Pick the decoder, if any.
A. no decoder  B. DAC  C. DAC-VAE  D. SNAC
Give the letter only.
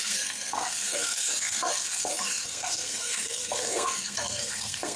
D